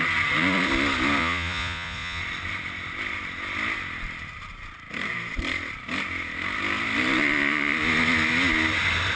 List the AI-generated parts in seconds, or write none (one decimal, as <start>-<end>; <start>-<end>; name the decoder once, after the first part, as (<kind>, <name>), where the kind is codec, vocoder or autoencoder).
1.2-2.2 (vocoder, Vocos)